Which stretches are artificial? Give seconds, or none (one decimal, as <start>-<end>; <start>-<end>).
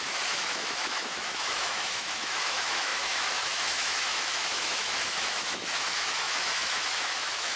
0.0-7.6